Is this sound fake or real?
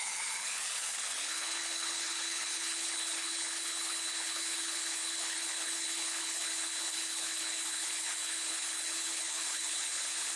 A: fake